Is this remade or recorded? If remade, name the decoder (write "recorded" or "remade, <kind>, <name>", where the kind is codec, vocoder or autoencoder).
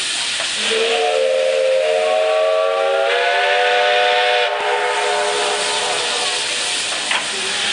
recorded